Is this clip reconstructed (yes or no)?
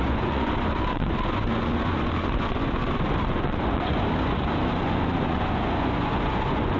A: yes